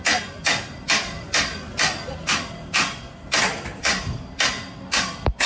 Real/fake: fake